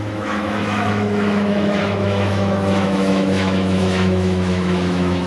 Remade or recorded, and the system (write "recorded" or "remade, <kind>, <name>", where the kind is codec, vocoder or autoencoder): remade, autoencoder, DAC-VAE